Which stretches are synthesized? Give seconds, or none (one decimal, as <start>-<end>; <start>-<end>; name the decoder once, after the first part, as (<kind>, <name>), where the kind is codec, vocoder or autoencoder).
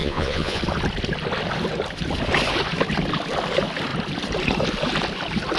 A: 0.0-0.6 (vocoder, Vocos)